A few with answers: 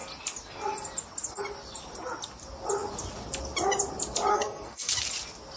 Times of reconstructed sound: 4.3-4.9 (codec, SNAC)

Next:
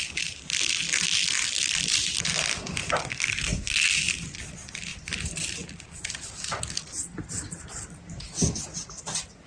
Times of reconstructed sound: 3.1-3.9 (codec, SNAC)